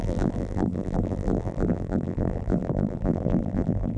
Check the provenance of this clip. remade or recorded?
remade